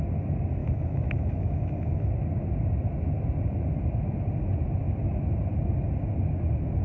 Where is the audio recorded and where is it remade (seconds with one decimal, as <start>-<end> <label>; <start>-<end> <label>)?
0.0-0.6 recorded; 0.6-2.1 remade; 2.1-6.8 recorded